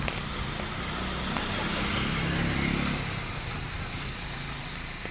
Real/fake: real